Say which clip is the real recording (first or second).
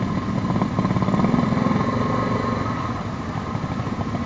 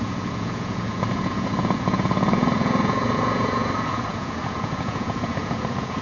first